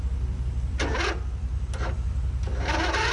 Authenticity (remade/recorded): recorded